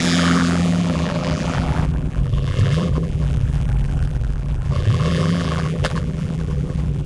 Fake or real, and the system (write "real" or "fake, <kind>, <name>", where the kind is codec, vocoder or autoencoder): fake, vocoder, BigVGAN v2